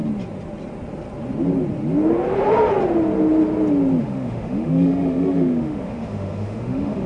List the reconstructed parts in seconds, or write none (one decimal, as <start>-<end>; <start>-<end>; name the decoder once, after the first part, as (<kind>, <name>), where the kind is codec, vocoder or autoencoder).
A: 4.0-7.1 (autoencoder, DAC-VAE)